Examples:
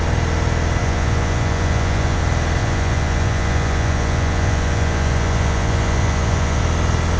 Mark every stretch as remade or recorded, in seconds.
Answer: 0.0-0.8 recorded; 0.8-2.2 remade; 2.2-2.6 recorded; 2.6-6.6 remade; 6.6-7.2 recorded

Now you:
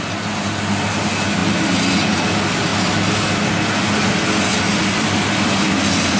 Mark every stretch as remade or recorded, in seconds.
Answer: 0.0-6.2 recorded

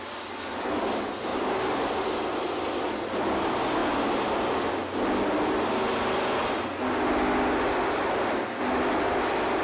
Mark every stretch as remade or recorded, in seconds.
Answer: 0.0-9.6 recorded